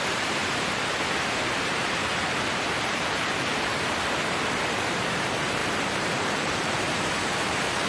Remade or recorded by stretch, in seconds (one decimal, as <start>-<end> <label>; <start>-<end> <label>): 0.0-0.4 remade; 0.4-1.3 recorded; 1.3-2.1 remade; 2.1-2.9 recorded; 2.9-3.7 remade; 3.7-4.9 recorded; 4.9-7.9 remade